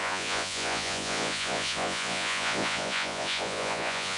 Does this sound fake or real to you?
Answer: fake